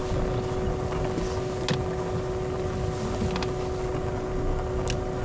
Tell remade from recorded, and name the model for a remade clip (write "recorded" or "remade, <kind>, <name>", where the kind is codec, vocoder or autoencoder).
recorded